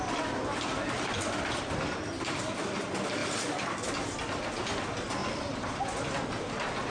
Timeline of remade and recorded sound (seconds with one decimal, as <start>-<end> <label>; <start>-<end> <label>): 0.0-6.9 recorded